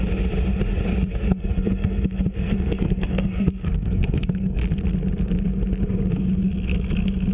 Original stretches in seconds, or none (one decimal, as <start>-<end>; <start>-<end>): 0.0-1.1; 4.6-7.3